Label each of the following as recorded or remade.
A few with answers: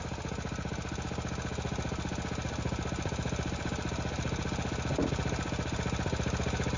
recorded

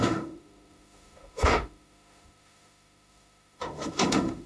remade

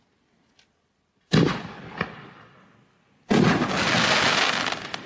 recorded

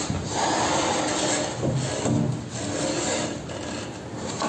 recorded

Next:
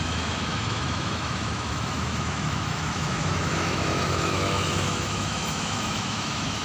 remade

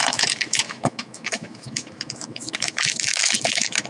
remade